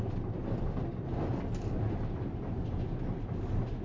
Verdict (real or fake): real